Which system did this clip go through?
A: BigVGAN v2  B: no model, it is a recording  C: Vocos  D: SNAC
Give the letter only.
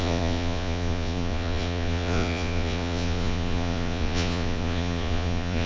C